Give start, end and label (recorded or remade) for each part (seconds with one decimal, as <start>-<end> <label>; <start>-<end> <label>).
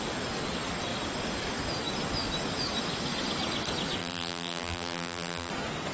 0.0-4.0 recorded; 4.0-5.5 remade; 5.5-5.9 recorded